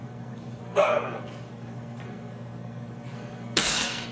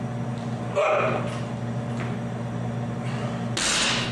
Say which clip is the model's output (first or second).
first